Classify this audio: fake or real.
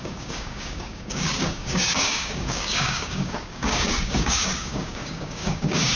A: fake